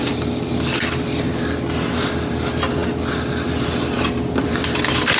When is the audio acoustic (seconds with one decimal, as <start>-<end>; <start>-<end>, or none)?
0.0-5.2